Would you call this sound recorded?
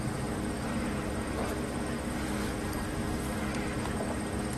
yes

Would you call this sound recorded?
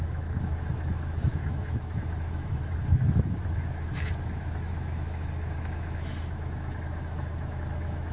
no